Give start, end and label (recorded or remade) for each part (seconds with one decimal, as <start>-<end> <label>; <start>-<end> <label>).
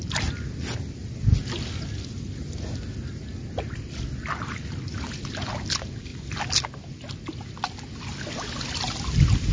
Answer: 0.0-9.5 recorded